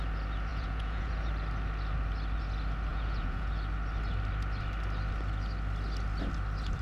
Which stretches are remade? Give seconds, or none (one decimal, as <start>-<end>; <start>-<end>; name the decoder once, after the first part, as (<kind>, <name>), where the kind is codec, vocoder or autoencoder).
0.5-1.3 (vocoder, Vocos); 2.9-3.5